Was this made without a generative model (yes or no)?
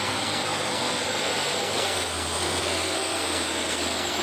no